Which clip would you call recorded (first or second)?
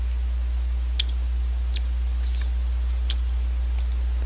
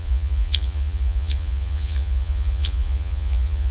first